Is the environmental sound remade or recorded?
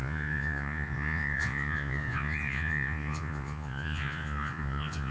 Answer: remade